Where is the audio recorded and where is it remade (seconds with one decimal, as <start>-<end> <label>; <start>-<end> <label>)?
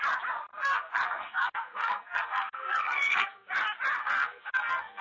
0.0-0.5 recorded; 0.5-3.5 remade; 3.5-4.0 recorded; 4.0-5.0 remade